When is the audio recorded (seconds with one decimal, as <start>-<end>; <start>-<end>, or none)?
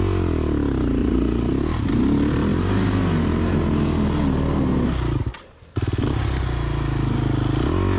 0.0-1.0; 1.5-8.0